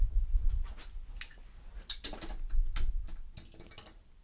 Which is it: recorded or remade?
recorded